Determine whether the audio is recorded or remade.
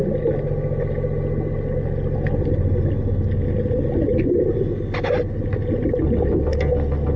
recorded